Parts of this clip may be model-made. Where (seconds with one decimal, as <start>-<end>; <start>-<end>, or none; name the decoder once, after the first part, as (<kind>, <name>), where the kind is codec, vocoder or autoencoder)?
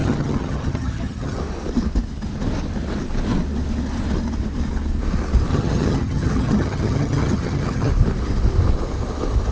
0.0-1.4 (vocoder, HiFi-GAN); 5.5-7.9